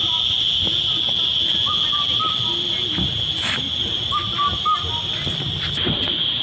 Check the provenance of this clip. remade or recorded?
recorded